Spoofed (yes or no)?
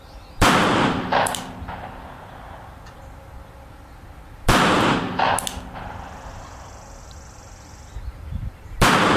no